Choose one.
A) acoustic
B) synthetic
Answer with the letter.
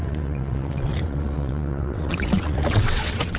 B